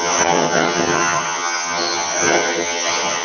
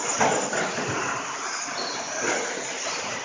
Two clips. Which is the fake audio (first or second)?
first